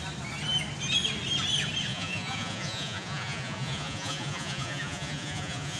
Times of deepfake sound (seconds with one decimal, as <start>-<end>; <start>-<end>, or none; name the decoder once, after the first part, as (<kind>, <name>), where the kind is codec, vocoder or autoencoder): 1.9-5.8 (vocoder, Vocos)

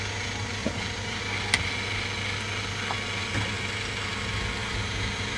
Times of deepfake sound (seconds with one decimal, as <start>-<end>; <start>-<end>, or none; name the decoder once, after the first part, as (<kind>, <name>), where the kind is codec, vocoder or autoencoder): 0.6-1.2 (vocoder, BigVGAN v2); 4.6-5.4

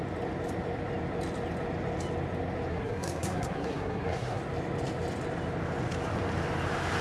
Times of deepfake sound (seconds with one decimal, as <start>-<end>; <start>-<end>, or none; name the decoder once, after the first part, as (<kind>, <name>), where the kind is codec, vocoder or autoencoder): 2.7-4.4 (codec, SNAC)

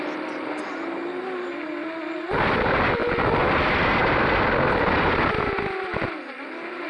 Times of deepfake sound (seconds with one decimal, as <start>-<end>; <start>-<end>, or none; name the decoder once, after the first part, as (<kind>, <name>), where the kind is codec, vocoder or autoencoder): none

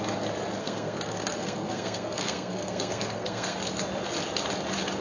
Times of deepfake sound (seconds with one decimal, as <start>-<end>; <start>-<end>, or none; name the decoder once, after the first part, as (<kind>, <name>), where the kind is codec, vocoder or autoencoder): 0.6-3.6 (codec, SNAC)

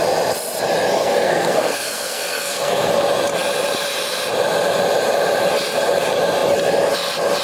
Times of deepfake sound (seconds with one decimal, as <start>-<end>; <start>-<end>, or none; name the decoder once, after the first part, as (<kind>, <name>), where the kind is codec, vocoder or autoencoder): 0.9-2.9 (codec, SNAC)